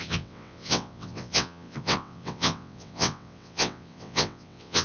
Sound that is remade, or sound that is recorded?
remade